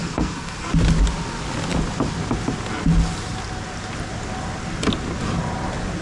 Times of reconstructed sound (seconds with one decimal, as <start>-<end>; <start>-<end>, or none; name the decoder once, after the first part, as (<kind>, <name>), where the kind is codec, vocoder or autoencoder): 0.0-0.7 (codec, SNAC)